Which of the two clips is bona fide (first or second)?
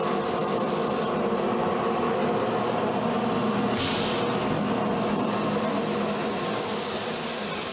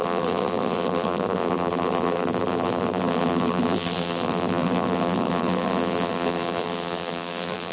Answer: first